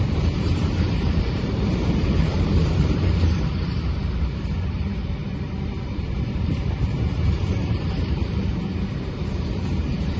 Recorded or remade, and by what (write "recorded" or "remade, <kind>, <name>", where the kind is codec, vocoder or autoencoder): remade, vocoder, BigVGAN v2